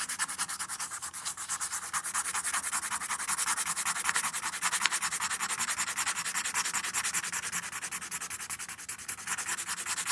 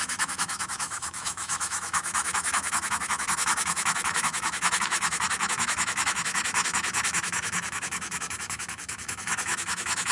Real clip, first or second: first